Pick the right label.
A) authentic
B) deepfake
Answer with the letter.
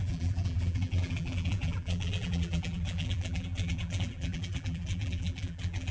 B